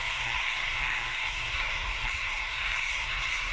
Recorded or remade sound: remade